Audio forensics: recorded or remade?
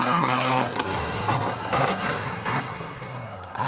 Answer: remade